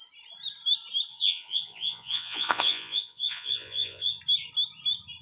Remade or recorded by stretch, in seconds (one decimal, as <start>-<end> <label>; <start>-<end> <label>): 0.0-1.1 recorded; 1.1-4.2 remade; 4.2-5.2 recorded